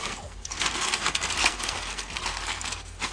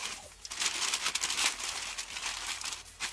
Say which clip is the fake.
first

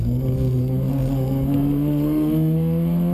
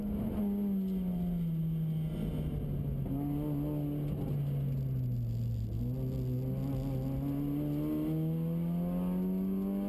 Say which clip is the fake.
first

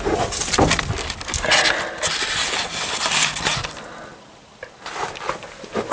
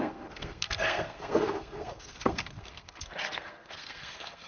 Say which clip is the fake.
second